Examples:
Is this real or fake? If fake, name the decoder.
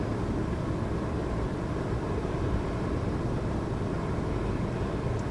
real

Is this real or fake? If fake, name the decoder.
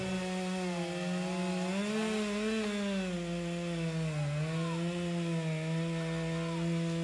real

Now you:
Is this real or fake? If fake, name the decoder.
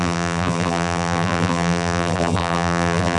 fake, vocoder, BigVGAN v2